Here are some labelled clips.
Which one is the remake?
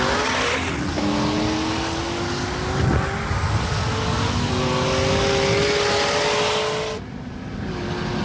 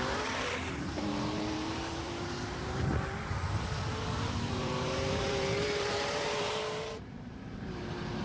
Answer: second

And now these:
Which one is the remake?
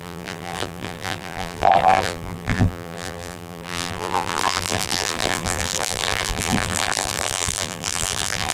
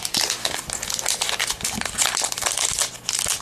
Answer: first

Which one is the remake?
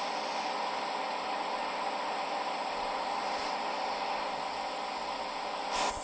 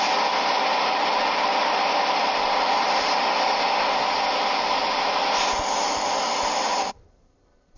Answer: second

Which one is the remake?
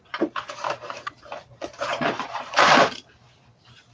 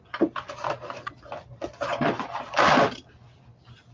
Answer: first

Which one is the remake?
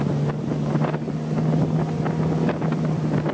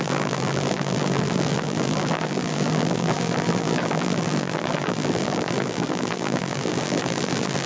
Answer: second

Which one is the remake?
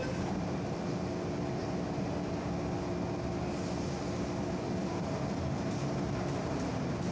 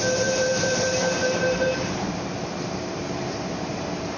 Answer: second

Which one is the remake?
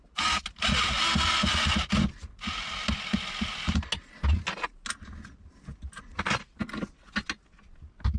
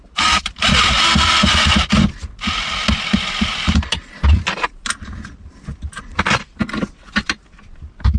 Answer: second